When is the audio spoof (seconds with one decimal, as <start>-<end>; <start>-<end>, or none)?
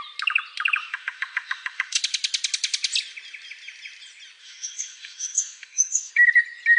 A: 0.8-2.0; 4.4-6.1